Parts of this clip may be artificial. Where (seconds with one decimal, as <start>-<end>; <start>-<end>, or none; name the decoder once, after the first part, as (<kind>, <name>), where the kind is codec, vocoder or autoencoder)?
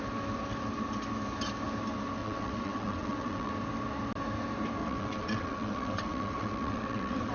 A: 2.2-3.5 (vocoder, WaveNeXt); 4.8-7.3